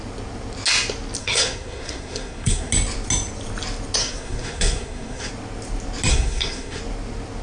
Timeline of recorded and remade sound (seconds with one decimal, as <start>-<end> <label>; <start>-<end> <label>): 0.0-1.2 recorded; 1.2-2.7 remade; 2.7-4.0 recorded; 4.0-5.3 remade; 5.3-6.1 recorded; 6.1-6.8 remade; 6.8-7.4 recorded